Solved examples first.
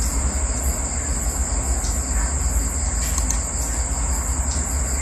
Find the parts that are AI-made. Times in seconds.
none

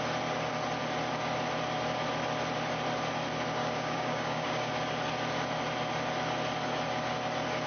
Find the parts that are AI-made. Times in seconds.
3.6-4.7 (codec, DAC)

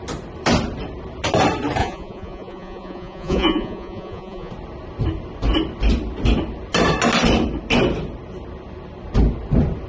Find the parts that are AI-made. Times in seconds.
1.8-4.5 (vocoder, Vocos)

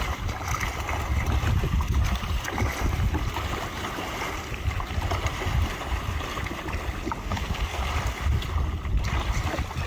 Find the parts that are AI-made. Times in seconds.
7.2-7.8 (codec, SNAC)

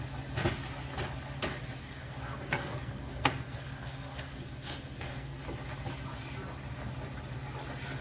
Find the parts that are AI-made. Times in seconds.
1.8-5.4 (codec, SNAC)